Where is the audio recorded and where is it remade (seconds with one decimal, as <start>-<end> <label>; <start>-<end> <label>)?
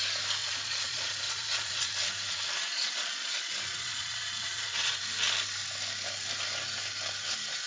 0.0-0.4 recorded; 0.4-1.9 remade; 1.9-2.7 recorded; 2.7-5.0 remade; 5.0-7.7 recorded